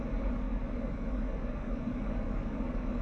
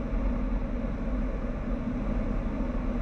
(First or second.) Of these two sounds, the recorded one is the second